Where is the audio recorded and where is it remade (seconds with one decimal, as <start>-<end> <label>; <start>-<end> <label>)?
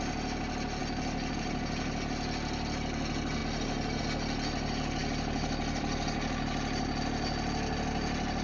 0.0-0.8 recorded; 0.8-1.3 remade; 1.3-5.0 recorded; 5.0-6.3 remade; 6.3-8.4 recorded